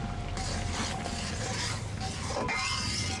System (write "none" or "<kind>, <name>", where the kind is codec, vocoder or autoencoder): none